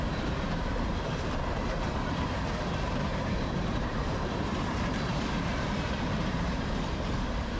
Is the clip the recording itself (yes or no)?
no